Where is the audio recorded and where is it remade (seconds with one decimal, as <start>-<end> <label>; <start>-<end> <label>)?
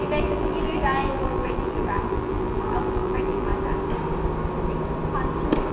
0.0-3.5 remade; 3.5-5.7 recorded